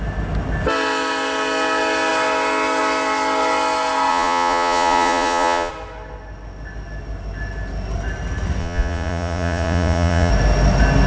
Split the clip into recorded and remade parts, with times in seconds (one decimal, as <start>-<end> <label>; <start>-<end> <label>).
0.0-4.1 recorded; 4.1-5.7 remade; 5.7-8.6 recorded; 8.6-10.3 remade; 10.3-11.1 recorded